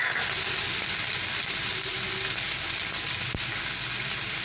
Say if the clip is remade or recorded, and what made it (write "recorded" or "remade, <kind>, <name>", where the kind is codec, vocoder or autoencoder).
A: remade, vocoder, BigVGAN v2